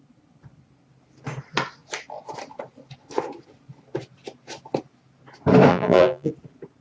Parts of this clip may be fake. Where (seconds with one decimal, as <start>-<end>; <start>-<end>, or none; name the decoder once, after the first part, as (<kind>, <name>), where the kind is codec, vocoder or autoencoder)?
5.7-6.3 (vocoder, BigVGAN v2)